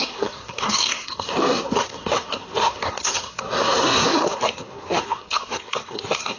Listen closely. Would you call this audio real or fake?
fake